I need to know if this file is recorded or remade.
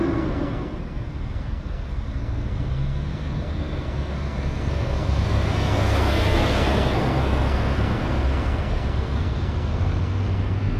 remade